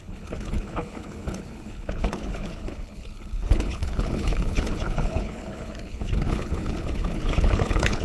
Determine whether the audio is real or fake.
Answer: fake